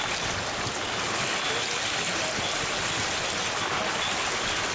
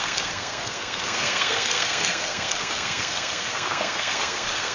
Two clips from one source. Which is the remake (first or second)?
second